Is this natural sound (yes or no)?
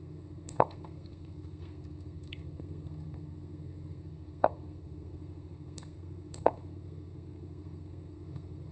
no